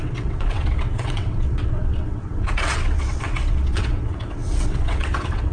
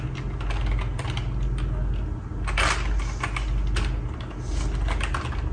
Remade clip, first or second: first